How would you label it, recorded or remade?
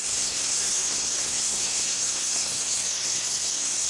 remade